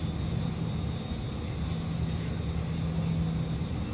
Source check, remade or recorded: recorded